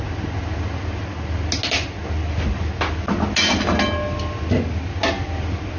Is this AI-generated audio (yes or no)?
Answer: no